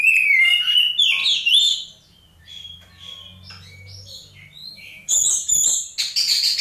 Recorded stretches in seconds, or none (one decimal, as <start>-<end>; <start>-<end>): 0.0-4.7; 5.4-6.6